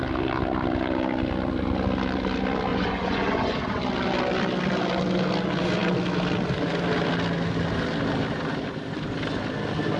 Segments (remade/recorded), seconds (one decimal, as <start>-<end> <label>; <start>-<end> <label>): 0.0-2.7 recorded; 2.7-3.8 remade; 3.8-10.0 recorded